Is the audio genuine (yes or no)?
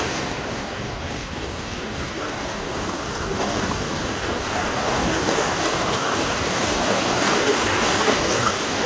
no